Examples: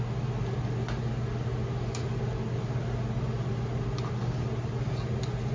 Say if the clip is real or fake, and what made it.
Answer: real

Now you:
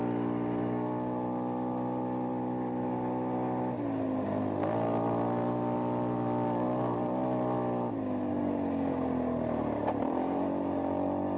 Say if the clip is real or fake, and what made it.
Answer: real